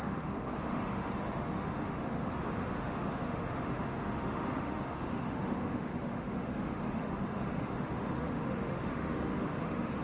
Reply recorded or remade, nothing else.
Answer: remade